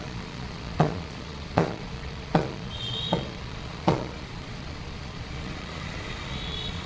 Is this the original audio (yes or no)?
no